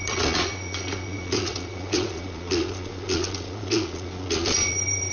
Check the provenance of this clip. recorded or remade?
remade